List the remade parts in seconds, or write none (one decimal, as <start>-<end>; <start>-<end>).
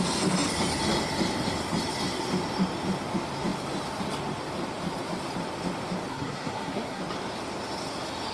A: 6.1-7.0